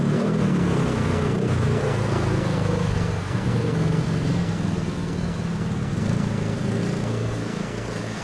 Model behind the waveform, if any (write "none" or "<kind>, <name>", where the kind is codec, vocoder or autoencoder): codec, SNAC